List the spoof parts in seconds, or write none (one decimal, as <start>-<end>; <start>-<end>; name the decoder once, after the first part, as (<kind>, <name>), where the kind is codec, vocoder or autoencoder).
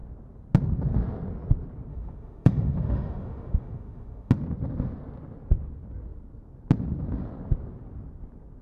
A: 1.9-4.3 (autoencoder, DAC-VAE)